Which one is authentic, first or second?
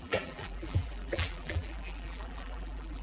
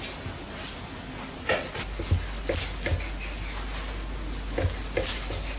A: second